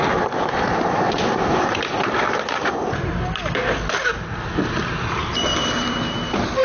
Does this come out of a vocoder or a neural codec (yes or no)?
no